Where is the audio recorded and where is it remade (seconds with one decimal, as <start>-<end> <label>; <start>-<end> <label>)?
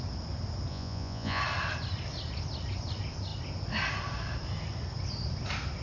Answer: 0.0-0.7 recorded; 0.7-1.4 remade; 1.4-5.8 recorded